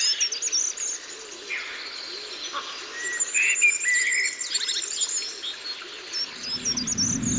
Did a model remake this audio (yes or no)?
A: no